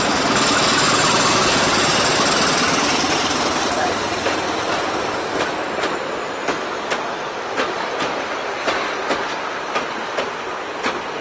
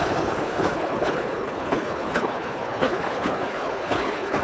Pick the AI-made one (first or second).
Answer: second